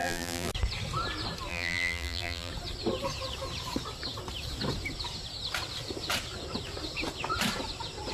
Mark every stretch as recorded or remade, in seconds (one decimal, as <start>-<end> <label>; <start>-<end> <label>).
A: 0.0-0.5 remade; 0.5-1.5 recorded; 1.5-2.5 remade; 2.5-8.1 recorded